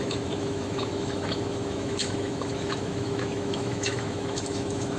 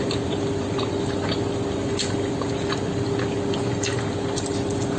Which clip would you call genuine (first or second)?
second